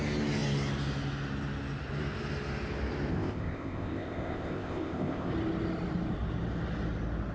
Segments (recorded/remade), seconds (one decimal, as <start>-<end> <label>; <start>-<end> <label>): 0.0-3.1 recorded; 3.1-5.3 remade; 5.3-7.3 recorded